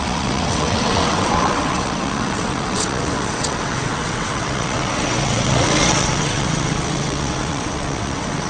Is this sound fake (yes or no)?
yes